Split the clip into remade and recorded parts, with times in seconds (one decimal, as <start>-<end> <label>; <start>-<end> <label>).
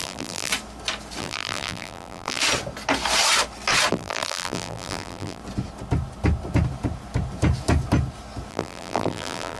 0.0-0.5 remade; 0.5-1.2 recorded; 1.2-2.4 remade; 2.4-3.9 recorded; 3.9-5.4 remade; 5.4-8.5 recorded; 8.5-9.6 remade